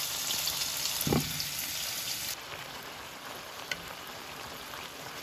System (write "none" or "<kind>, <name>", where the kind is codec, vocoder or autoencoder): none